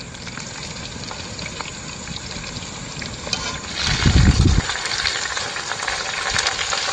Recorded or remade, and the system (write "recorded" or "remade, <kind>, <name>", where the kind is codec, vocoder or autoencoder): recorded